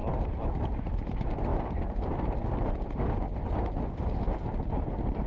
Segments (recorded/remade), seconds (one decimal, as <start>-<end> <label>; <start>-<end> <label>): 0.0-5.3 recorded